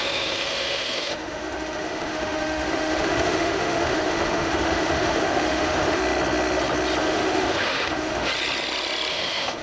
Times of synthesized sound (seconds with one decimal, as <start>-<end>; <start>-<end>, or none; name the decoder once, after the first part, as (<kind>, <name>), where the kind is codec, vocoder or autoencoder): 0.0-6.0 (autoencoder, DAC-VAE); 7.0-8.3; 9.1-9.6